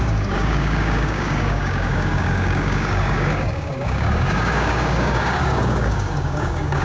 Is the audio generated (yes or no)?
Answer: yes